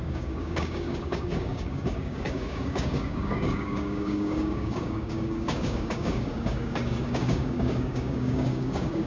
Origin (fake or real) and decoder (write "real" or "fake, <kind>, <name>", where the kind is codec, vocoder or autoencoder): fake, codec, DAC